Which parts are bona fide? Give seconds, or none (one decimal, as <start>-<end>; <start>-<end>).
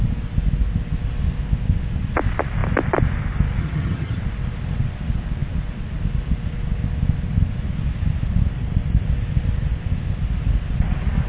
0.0-3.6; 4.2-11.3